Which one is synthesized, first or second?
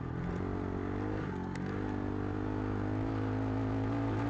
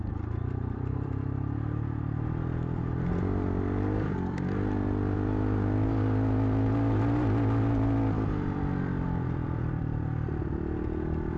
second